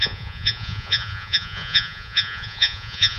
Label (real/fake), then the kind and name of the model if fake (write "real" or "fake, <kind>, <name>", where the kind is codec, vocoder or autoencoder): fake, vocoder, Vocos